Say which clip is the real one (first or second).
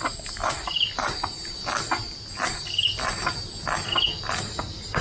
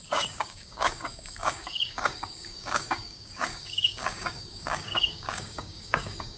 first